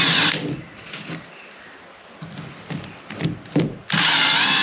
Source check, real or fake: real